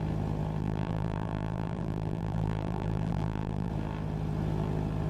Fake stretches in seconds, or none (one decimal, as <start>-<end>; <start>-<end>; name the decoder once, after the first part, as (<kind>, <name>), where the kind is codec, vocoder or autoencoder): 0.6-3.7 (vocoder, BigVGAN v2)